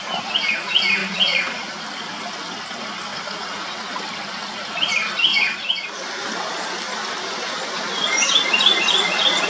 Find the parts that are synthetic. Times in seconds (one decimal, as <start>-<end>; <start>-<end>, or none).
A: 1.0-1.8; 3.1-3.8